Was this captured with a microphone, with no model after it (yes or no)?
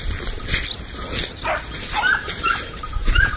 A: yes